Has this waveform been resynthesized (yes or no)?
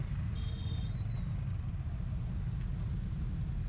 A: no